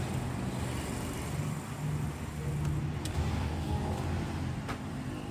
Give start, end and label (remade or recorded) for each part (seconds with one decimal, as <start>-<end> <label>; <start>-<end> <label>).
0.0-3.0 recorded; 3.0-3.9 remade; 3.9-5.3 recorded